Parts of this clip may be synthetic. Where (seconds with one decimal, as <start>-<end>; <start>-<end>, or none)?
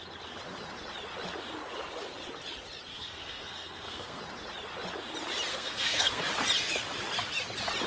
2.9-4.2; 5.5-6.2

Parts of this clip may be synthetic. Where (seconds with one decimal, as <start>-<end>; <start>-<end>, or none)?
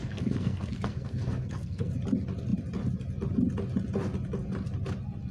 0.0-1.9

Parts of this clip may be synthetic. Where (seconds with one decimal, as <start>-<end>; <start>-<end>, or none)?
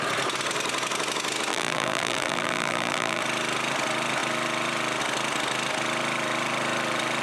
1.5-3.2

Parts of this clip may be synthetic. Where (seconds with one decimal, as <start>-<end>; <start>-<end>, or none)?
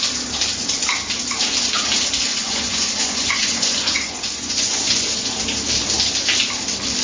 2.3-5.3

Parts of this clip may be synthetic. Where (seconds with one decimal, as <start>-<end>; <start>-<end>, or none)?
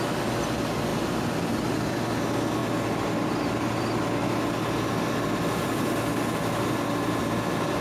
none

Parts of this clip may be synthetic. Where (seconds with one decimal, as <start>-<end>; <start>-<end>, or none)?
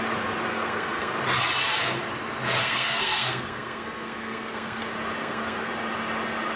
0.5-1.1; 2.6-4.8; 5.2-5.7